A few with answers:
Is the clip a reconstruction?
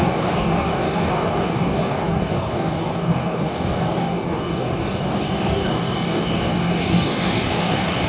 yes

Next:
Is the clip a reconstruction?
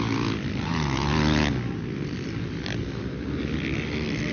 no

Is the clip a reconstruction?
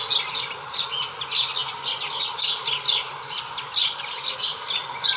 no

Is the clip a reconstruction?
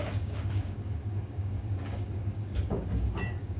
yes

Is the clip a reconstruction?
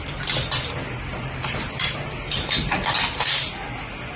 no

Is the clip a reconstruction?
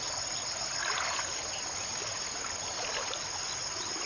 no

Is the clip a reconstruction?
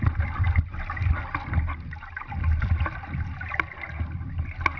no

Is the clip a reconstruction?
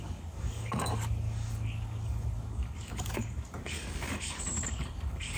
yes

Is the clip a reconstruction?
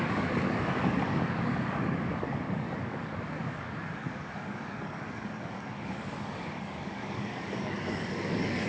yes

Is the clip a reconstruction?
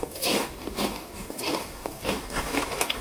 yes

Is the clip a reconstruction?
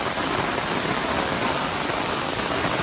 no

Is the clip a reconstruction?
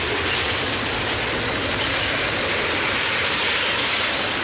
no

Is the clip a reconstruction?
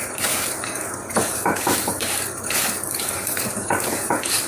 yes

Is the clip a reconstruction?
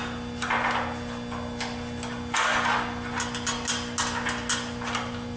no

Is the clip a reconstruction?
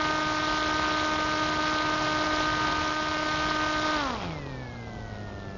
no